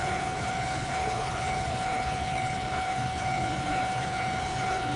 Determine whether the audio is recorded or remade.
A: remade